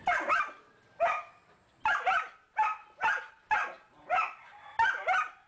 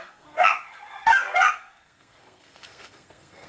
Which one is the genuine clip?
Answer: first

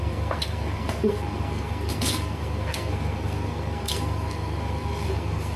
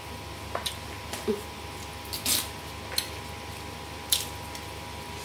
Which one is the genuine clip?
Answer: second